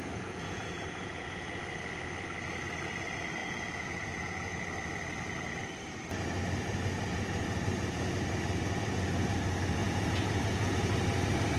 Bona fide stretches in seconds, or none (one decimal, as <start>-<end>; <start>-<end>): 1.6-3.4; 4.6-9.8; 10.9-11.6